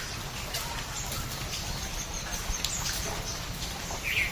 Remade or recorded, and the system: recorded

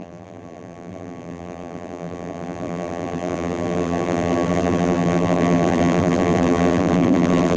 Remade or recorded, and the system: remade, vocoder, BigVGAN v2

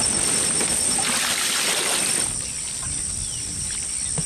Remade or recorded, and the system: recorded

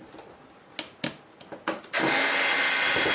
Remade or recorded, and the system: recorded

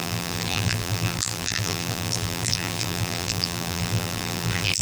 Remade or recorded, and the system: remade, vocoder, BigVGAN v2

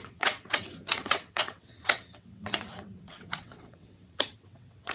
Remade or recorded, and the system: remade, vocoder, WaveNeXt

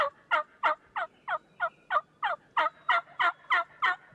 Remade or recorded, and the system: recorded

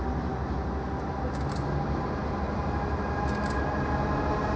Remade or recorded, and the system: recorded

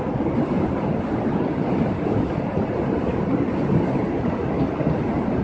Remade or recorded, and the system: recorded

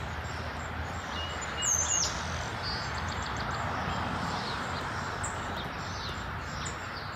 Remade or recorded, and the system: recorded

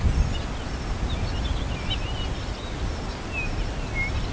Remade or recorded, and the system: recorded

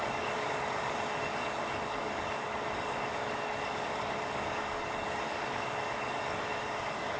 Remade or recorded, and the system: remade, codec, DAC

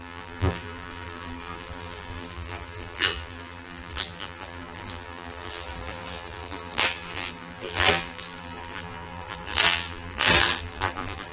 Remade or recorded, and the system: remade, vocoder, BigVGAN v2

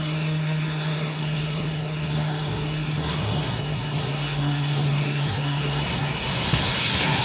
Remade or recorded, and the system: remade, codec, SNAC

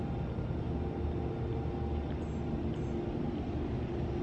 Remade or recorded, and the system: recorded